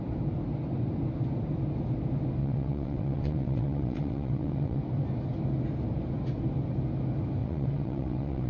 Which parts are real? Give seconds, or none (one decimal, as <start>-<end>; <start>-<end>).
0.0-2.4; 4.8-7.4